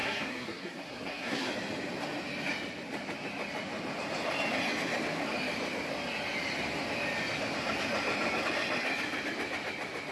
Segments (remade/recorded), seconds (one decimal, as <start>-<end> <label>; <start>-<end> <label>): 0.0-1.5 remade; 1.5-10.1 recorded